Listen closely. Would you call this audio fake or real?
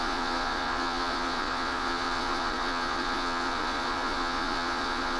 fake